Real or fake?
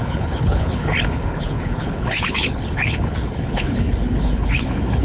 fake